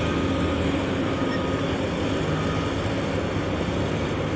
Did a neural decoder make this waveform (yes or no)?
no